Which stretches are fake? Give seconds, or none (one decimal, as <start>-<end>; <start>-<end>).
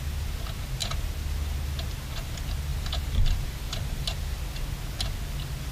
2.7-4.4